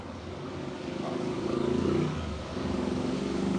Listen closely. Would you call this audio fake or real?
fake